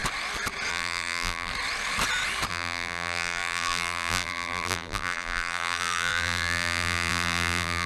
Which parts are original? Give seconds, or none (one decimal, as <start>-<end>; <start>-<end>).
0.0-0.7; 1.5-2.5